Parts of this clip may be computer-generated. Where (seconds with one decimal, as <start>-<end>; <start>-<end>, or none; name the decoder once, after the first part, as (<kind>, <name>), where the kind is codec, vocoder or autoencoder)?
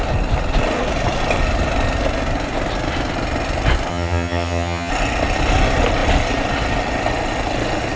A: 3.9-4.9 (vocoder, HiFi-GAN)